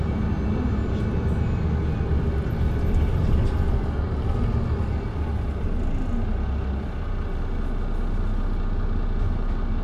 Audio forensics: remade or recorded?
recorded